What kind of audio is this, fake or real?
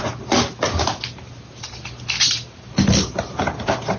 real